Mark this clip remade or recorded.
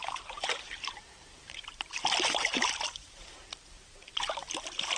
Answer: remade